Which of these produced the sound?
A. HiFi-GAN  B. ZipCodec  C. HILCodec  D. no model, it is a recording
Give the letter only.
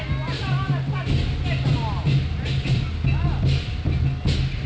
D